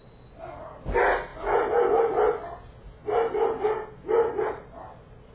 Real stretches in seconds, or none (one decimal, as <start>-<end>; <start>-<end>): 0.0-5.3